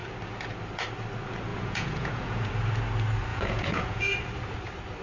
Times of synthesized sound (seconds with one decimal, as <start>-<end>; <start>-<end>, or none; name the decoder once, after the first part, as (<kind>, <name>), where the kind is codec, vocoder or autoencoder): 1.5-2.5 (vocoder, Vocos); 3.3-4.1